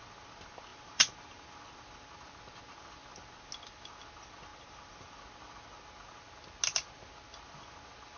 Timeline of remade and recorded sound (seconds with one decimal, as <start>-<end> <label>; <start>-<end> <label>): 0.0-0.7 recorded; 0.7-1.6 remade; 1.6-4.5 recorded; 4.5-5.1 remade; 5.1-8.2 recorded